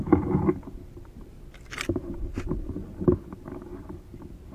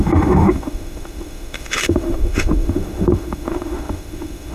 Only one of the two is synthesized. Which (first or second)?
second